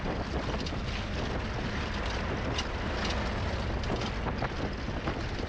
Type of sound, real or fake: real